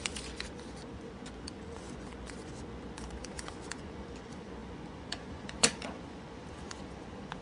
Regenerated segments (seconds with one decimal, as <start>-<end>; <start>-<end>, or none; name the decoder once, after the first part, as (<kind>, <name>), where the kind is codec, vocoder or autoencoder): 0.0-7.4 (vocoder, Vocos)